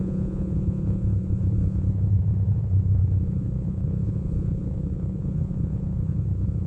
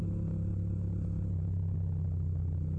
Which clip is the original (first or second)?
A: second